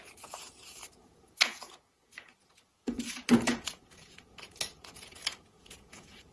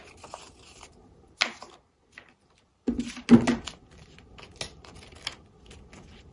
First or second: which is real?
second